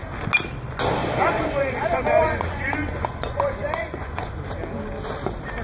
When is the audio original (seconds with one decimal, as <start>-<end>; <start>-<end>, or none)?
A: 0.0-1.0; 4.4-5.6